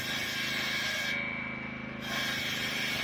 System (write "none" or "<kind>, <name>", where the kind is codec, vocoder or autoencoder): none